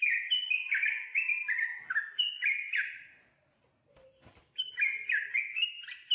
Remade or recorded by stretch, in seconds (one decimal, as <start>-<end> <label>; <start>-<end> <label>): 0.0-6.1 recorded